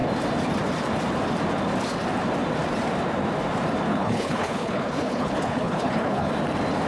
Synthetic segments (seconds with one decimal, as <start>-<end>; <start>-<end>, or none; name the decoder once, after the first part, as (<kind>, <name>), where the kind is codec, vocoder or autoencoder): 3.9-6.3 (codec, HILCodec)